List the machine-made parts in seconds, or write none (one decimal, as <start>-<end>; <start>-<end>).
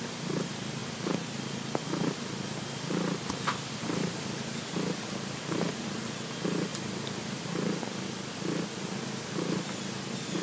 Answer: 0.0-0.8; 3.7-10.4